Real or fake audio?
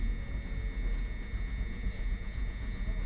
real